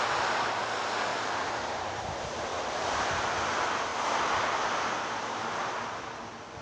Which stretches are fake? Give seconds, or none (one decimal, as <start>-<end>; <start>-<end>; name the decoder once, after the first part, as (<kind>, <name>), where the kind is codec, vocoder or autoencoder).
1.1-2.0 (vocoder, BigVGAN v2)